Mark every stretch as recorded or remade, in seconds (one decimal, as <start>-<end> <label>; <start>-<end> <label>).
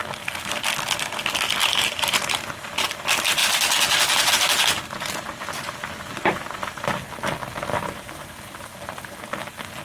0.0-1.6 recorded; 1.6-2.2 remade; 2.2-7.7 recorded; 7.7-9.1 remade; 9.1-9.8 recorded